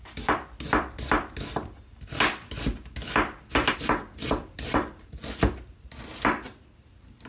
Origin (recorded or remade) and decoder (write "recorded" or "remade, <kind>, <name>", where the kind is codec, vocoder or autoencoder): recorded